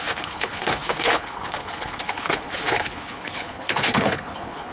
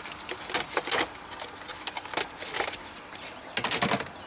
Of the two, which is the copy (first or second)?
first